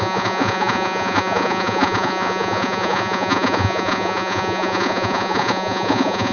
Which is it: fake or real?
fake